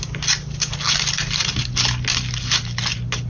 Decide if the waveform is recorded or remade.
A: recorded